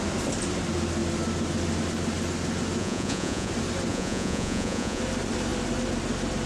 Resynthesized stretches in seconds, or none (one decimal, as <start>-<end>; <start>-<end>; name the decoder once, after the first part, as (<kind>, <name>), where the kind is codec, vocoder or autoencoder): 2.8-3.5 (vocoder, Vocos); 3.9-5.0